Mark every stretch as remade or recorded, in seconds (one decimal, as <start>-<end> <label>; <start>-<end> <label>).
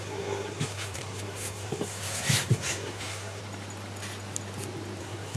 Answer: 0.0-3.4 remade; 3.4-5.0 recorded; 5.0-5.4 remade